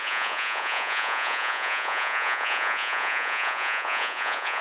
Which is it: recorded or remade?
remade